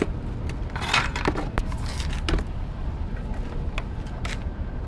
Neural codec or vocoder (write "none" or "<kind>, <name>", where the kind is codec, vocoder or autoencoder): none